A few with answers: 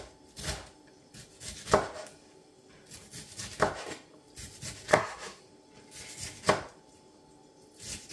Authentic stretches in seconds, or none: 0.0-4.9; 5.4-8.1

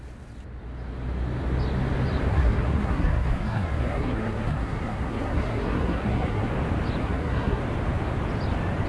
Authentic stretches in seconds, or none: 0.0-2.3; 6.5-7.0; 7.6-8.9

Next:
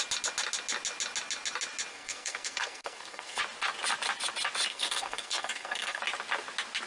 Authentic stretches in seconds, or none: 0.0-1.9; 3.4-4.7; 6.0-6.9

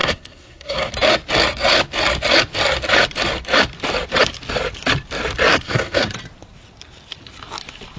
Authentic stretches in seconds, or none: 0.9-5.5; 6.1-8.0

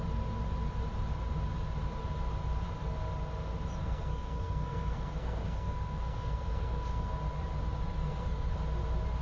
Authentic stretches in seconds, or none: 0.0-3.8; 7.1-8.0; 8.5-9.2

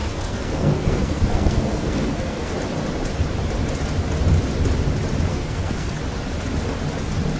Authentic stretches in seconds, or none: 2.5-5.3; 6.0-7.4